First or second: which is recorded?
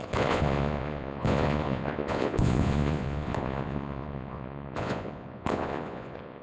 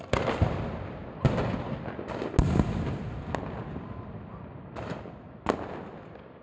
second